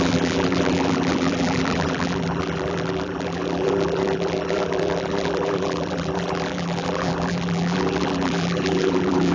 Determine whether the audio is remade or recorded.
remade